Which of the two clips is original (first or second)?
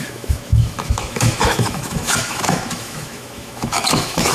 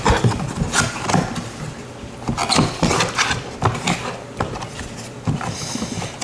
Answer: second